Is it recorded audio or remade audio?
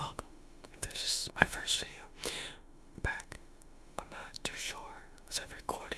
remade